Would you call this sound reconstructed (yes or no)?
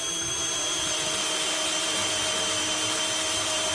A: no